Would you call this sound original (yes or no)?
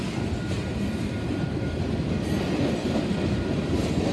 yes